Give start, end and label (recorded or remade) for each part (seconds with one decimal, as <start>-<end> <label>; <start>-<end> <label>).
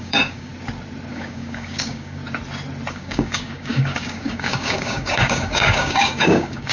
0.0-0.5 remade; 0.5-1.1 recorded; 1.1-2.2 remade; 2.2-2.9 recorded; 2.9-6.7 remade